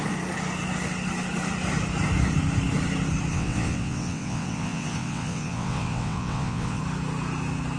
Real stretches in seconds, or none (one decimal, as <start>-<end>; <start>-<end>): 0.0-3.3; 6.8-7.8